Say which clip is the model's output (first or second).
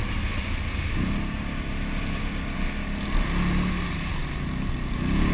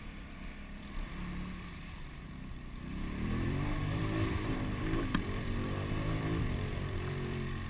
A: second